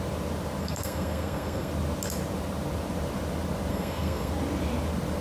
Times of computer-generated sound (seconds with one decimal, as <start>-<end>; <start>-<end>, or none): 0.6-1.7; 3.7-4.3